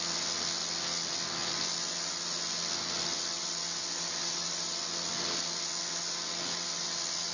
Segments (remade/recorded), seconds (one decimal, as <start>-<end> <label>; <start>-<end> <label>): 0.0-7.3 recorded